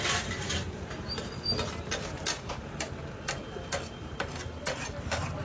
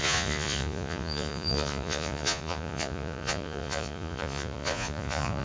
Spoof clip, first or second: second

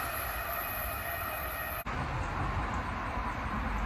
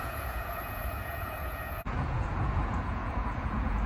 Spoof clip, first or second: second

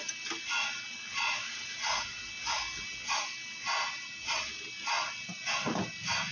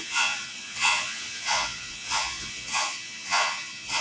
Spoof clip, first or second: second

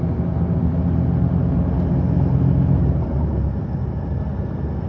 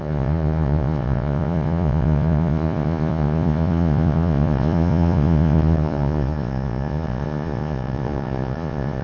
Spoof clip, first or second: second